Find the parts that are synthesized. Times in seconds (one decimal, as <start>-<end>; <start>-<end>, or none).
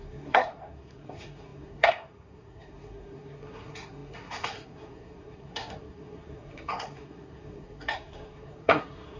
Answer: 0.0-9.2